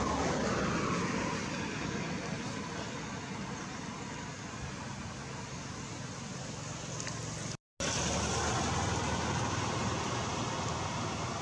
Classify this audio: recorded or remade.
recorded